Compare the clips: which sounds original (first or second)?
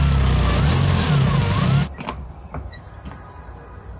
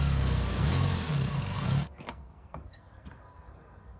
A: first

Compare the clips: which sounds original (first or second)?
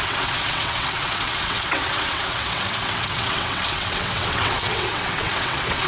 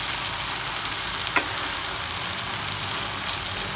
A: second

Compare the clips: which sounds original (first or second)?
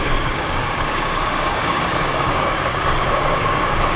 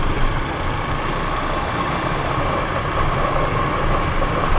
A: second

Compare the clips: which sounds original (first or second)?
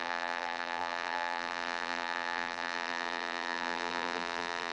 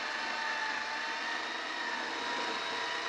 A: second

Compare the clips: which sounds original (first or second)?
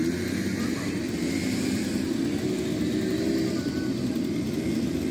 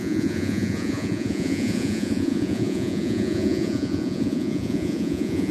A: first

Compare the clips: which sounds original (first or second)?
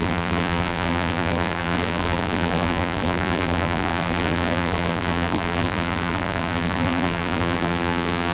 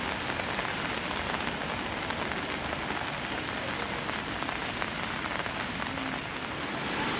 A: second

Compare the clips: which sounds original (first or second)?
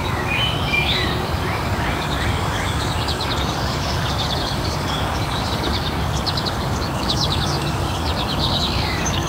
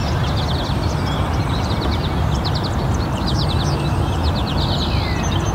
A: second